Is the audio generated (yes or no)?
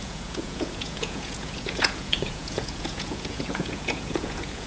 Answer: yes